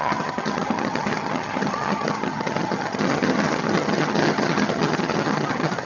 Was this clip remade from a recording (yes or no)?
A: yes